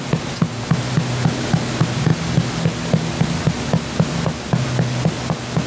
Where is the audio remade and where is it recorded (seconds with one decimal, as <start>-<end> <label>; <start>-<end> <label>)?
0.0-5.7 recorded